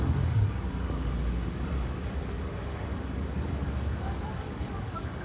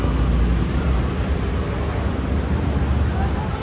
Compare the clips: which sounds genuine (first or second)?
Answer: second